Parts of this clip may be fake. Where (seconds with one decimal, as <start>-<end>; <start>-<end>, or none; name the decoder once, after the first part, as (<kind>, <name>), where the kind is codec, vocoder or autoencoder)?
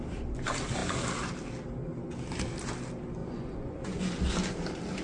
3.2-4.0 (vocoder, Vocos)